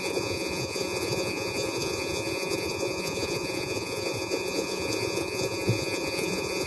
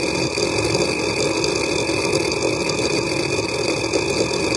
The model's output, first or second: first